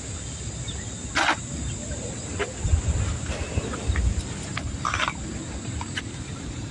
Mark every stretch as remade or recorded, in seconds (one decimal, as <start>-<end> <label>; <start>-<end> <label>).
0.0-6.7 recorded